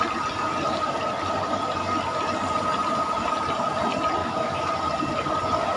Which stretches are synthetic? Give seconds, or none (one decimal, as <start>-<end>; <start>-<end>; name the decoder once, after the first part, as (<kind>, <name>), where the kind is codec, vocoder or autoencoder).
4.2-4.7 (autoencoder, DAC-VAE)